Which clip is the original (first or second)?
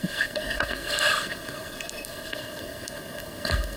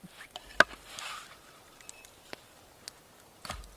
second